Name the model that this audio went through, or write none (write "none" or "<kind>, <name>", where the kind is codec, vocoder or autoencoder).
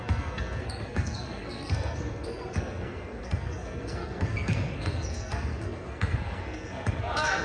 codec, SNAC